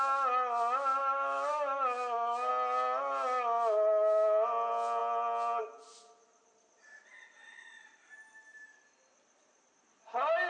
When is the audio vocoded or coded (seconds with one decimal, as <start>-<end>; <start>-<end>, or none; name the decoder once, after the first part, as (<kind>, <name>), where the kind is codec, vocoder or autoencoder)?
1.0-2.5 (autoencoder, DAC-VAE)